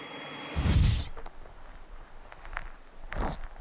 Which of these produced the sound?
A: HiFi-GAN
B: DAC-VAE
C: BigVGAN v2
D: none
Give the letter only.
C